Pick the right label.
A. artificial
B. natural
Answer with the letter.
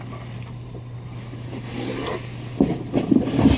B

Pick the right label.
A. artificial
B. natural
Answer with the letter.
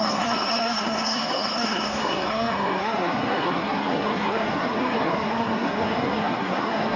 A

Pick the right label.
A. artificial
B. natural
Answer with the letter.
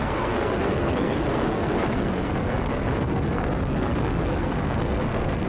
A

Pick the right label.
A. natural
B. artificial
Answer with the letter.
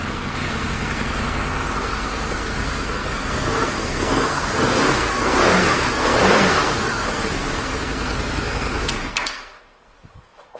B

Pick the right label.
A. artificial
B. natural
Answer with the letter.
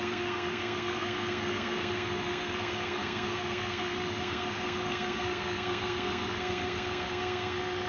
A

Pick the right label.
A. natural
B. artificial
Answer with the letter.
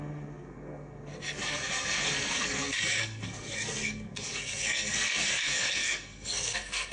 B